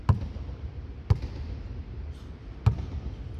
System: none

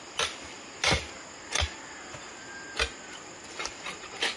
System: none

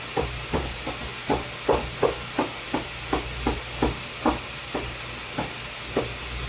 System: none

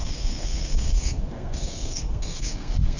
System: codec, SNAC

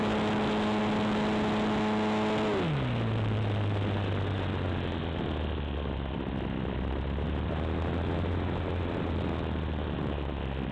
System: none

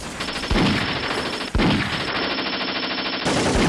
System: none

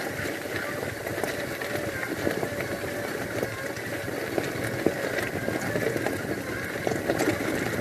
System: none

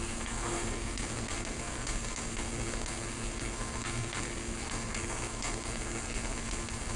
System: codec, SNAC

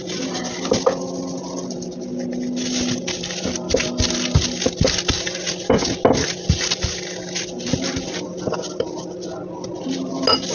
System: none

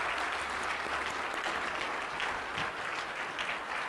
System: none